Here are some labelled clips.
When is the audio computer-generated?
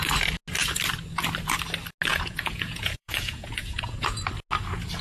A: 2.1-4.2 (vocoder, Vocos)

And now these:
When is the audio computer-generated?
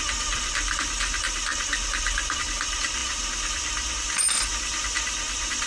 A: 0.0-5.7 (vocoder, BigVGAN v2)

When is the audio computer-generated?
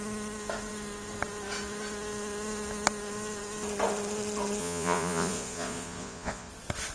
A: 4.6-6.5 (vocoder, Vocos)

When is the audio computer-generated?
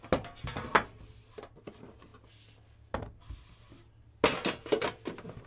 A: none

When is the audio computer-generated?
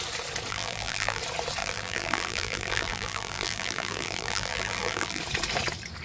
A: 0.5-1.2 (vocoder, BigVGAN v2); 1.6-5.2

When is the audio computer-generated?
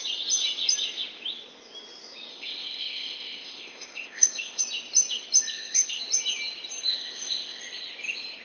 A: 2.3-4.6 (codec, ZipCodec); 5.5-6.0; 6.9-7.6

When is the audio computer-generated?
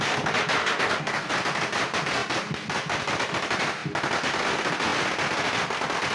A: 0.6-1.3 (codec, DAC)